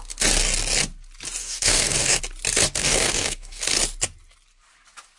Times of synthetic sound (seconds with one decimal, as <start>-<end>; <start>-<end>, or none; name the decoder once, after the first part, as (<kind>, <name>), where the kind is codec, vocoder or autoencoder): 1.4-2.2 (codec, DAC); 2.8-3.6